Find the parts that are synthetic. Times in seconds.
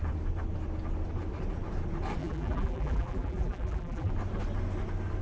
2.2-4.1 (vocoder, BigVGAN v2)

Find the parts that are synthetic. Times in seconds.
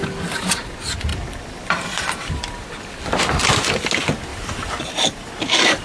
1.1-2.3 (vocoder, BigVGAN v2); 4.3-5.3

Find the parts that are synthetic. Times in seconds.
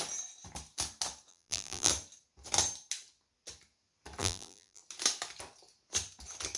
1.3-1.9 (vocoder, BigVGAN v2); 4.2-4.8